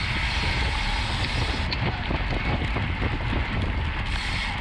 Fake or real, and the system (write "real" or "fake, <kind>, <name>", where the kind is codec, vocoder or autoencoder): real